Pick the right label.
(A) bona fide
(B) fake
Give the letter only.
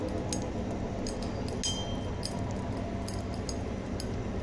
A